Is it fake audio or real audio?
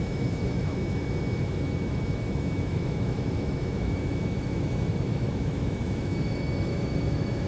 fake